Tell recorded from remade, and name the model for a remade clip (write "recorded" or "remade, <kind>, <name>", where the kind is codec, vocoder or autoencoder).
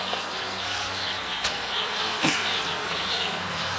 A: remade, codec, SNAC